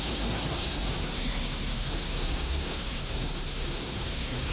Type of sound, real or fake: fake